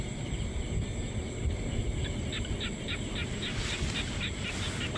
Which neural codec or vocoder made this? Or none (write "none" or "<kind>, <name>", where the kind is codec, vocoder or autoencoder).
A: none